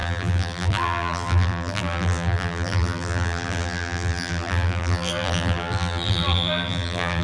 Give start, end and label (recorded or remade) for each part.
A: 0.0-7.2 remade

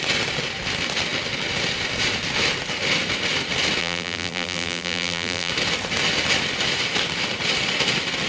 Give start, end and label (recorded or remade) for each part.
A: 0.0-3.8 recorded; 3.8-5.5 remade; 5.5-8.3 recorded

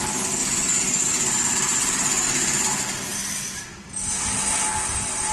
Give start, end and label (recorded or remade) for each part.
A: 0.0-1.7 recorded; 1.7-2.6 remade; 2.6-3.1 recorded; 3.1-3.6 remade; 3.6-5.3 recorded